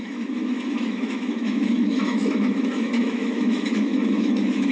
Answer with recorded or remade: remade